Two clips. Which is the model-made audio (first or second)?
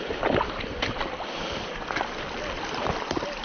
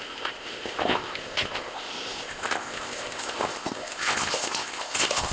second